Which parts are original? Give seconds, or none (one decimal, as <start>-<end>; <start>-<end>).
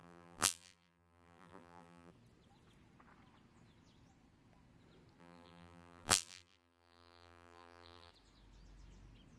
2.1-5.2; 8.1-9.4